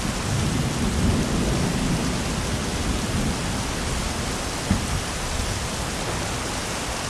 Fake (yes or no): no